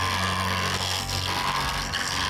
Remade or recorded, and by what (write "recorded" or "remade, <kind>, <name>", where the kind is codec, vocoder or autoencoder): remade, codec, SNAC